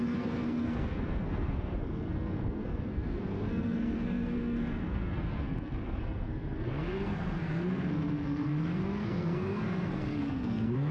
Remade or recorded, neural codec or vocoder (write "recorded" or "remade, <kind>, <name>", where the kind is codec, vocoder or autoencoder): remade, codec, SNAC